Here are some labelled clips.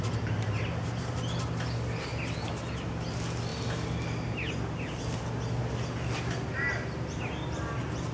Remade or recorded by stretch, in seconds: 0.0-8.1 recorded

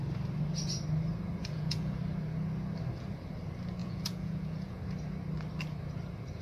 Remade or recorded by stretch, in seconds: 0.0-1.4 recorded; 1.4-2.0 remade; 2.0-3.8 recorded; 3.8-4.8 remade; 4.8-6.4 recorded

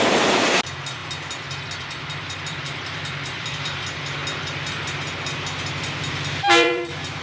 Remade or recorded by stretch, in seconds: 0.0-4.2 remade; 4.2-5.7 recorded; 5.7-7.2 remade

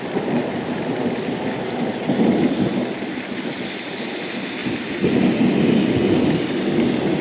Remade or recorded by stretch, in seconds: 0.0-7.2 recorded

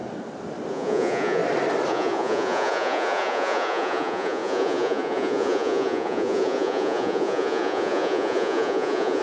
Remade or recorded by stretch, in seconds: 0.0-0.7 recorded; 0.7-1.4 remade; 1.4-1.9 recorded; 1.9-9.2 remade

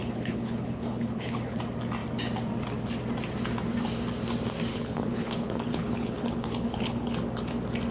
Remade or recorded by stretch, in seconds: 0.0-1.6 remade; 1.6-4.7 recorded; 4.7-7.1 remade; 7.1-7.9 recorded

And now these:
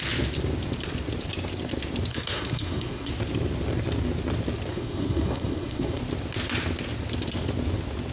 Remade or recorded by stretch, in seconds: 0.0-2.1 recorded; 2.1-3.1 remade; 3.1-4.7 recorded; 4.7-6.0 remade; 6.0-8.1 recorded